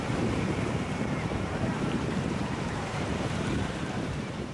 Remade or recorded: remade